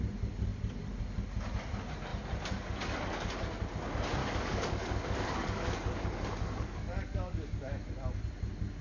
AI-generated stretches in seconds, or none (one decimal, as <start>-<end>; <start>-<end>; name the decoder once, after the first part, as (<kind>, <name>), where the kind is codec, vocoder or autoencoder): 4.2-7.9 (codec, DAC)